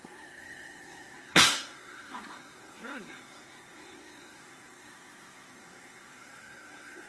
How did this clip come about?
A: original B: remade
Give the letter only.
B